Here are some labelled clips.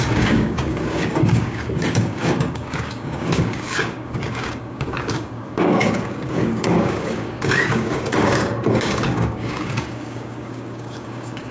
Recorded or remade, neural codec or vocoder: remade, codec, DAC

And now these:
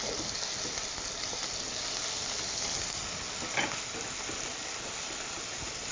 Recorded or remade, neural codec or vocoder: recorded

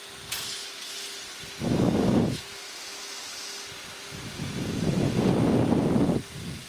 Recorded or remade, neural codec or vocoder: recorded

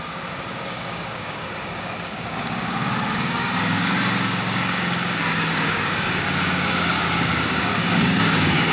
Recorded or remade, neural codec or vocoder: remade, codec, DAC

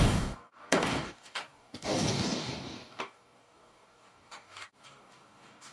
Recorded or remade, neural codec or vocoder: remade, codec, DAC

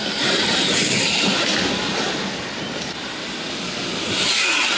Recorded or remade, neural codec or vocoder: recorded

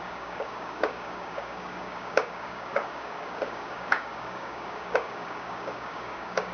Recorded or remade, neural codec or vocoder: remade, codec, DAC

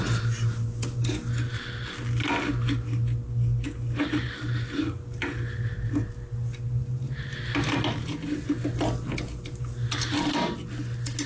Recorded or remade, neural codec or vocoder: recorded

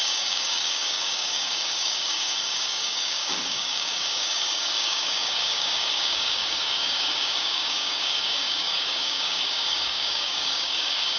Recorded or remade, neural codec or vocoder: remade, codec, DAC